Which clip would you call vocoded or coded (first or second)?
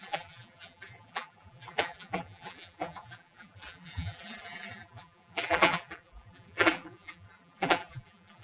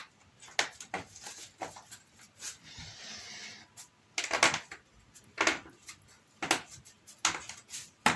first